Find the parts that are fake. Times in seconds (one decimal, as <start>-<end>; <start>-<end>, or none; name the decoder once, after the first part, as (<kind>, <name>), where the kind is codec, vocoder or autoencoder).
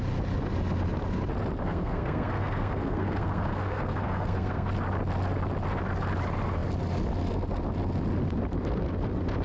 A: 1.6-4.7 (codec, SNAC)